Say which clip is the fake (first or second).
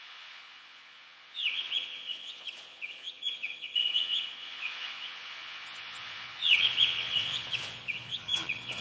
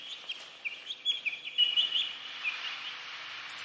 first